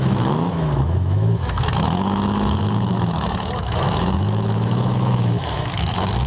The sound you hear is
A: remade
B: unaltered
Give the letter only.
A